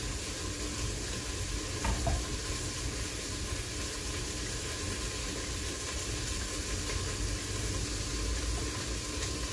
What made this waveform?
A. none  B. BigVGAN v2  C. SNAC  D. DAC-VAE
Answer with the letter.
A